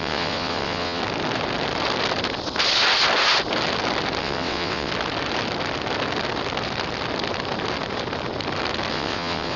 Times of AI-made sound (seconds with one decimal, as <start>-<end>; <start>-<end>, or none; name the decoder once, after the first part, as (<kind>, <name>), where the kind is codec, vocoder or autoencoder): 0.0-1.0 (vocoder, WaveNeXt); 4.2-4.9; 8.9-9.6